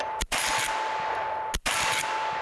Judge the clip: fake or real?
real